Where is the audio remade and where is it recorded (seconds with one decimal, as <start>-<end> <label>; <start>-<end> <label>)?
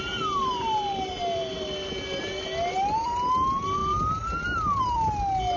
0.0-5.6 recorded